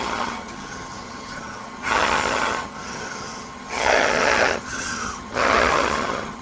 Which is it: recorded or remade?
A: remade